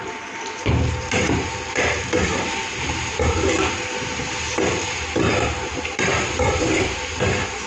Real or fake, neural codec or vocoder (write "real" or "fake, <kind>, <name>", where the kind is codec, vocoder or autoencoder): fake, vocoder, BigVGAN v2